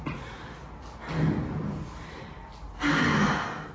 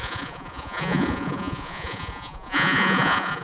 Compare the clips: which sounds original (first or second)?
first